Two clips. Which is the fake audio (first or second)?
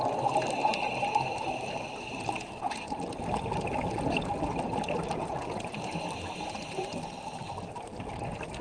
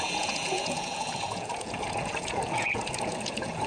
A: second